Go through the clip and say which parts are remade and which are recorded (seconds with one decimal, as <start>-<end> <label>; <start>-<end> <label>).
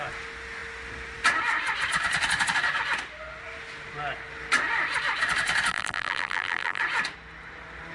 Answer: 0.0-5.7 recorded; 5.7-6.8 remade; 6.8-7.9 recorded